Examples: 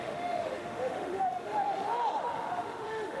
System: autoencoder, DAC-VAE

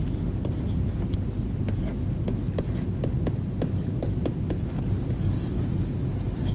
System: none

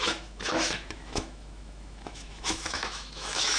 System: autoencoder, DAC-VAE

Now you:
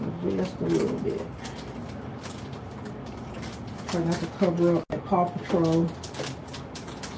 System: none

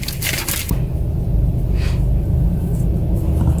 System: none